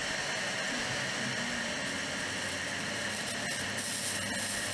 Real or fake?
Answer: real